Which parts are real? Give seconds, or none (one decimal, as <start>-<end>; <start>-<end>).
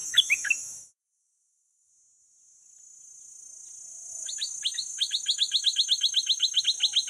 1.9-4.1; 6.6-7.1